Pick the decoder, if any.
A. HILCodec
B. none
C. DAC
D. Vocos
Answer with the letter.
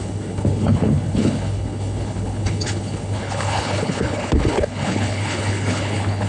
A